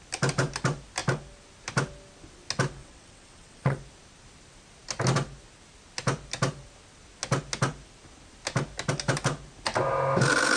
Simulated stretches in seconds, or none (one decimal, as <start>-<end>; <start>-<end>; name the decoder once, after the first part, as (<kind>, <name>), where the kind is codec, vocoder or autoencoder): 2.8-3.8 (vocoder, WaveNeXt)